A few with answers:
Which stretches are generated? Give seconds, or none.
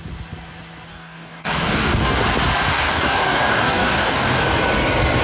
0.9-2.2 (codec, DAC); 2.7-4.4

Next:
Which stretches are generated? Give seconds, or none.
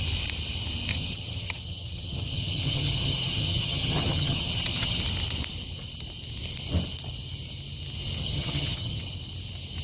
0.9-5.0 (vocoder, HiFi-GAN); 8.2-9.0